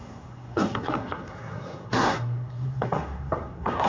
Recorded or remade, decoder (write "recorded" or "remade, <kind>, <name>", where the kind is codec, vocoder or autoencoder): remade, codec, SNAC